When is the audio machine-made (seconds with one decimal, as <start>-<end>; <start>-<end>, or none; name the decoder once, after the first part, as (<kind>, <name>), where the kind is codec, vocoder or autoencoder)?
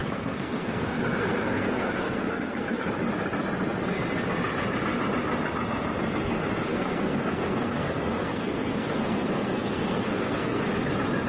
0.0-2.9 (codec, SNAC); 6.7-10.7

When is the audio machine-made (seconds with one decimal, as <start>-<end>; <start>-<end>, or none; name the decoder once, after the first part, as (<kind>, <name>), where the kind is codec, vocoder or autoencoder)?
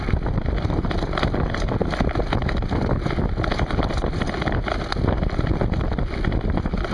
none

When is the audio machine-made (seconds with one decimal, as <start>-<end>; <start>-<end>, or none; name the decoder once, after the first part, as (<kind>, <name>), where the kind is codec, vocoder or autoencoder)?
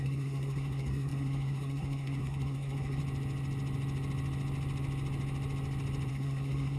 0.0-3.0 (codec, SNAC); 6.1-6.8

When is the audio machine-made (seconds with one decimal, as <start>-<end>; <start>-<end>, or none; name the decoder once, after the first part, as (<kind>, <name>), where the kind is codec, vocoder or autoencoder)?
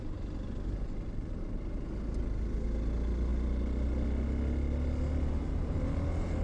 none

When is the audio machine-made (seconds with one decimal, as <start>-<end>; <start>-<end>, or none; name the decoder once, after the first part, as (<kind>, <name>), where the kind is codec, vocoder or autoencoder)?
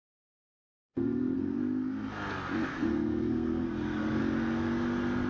0.9-1.6 (codec, SNAC); 2.7-4.2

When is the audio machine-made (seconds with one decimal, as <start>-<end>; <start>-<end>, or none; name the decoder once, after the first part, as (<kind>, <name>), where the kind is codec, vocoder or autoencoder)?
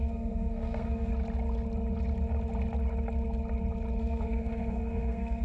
0.0-1.1 (codec, SNAC); 4.0-5.4